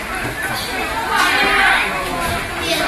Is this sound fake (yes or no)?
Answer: no